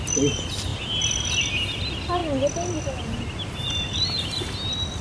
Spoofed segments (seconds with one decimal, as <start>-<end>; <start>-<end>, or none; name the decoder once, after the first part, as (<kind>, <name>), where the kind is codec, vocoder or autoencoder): none